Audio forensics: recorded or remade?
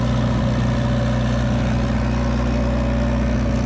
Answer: recorded